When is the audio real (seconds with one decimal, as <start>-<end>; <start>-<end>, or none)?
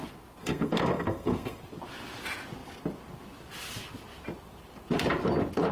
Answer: 0.0-0.4; 1.6-5.7